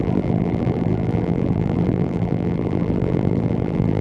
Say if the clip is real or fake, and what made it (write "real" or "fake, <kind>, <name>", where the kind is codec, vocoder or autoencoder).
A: fake, vocoder, BigVGAN v2